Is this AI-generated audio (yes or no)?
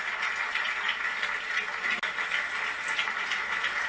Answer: no